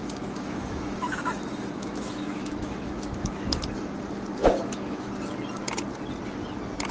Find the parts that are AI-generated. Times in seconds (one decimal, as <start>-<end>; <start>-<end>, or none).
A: 0.0-3.6; 4.4-5.1